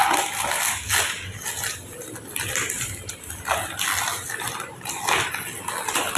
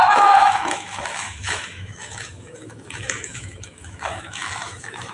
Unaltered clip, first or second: first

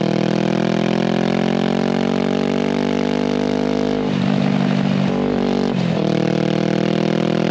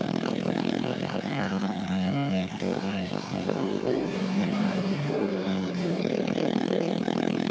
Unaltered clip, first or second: first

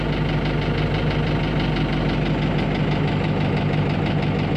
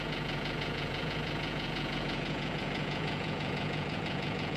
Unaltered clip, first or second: first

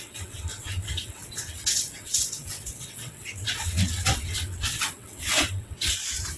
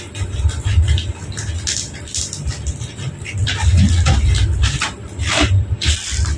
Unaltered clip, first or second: second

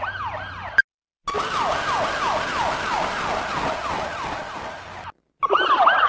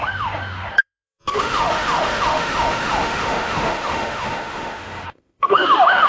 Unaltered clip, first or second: first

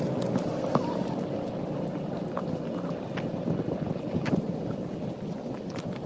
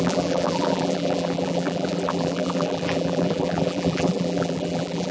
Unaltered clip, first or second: first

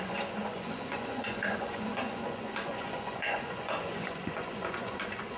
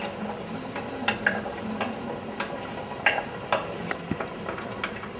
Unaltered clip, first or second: second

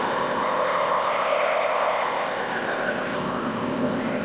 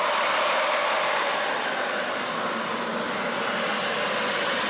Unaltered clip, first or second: second